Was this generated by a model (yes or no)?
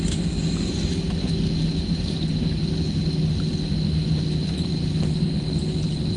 no